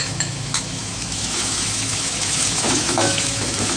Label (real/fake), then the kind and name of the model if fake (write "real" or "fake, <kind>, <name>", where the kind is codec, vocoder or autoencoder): fake, autoencoder, DAC-VAE